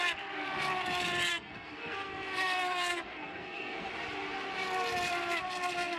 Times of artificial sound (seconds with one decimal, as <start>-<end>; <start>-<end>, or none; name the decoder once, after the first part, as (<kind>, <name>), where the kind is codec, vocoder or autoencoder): 1.3-3.9 (codec, SNAC)